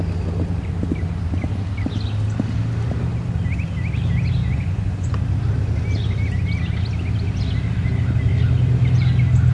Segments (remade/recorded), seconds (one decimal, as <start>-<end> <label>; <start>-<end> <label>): 0.0-4.4 recorded; 4.4-5.1 remade; 5.1-9.5 recorded